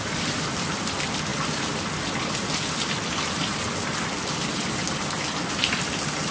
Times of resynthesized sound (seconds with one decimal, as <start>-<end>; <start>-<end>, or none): none